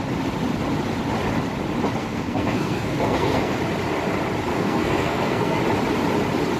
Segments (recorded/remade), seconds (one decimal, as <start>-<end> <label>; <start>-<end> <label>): 0.0-2.0 recorded; 2.0-3.6 remade; 3.6-4.5 recorded; 4.5-5.6 remade; 5.6-6.6 recorded

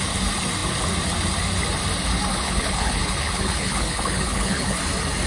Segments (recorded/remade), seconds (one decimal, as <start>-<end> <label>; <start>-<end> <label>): 0.0-2.3 recorded; 2.3-4.8 remade; 4.8-5.3 recorded

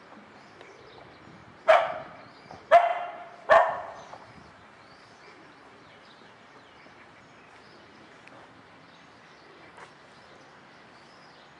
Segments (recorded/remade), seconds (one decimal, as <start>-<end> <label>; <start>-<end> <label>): 0.0-1.4 recorded; 1.4-2.5 remade; 2.5-2.9 recorded; 2.9-7.2 remade; 7.2-11.6 recorded

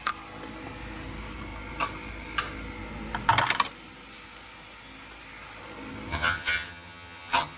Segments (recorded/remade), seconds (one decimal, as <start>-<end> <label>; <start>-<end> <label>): 0.0-6.1 recorded; 6.1-7.6 remade

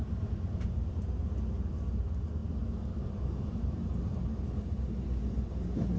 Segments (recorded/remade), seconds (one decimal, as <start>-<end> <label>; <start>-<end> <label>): 0.0-6.0 recorded